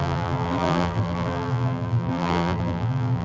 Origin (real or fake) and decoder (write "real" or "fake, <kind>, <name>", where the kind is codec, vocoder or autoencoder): fake, vocoder, BigVGAN v2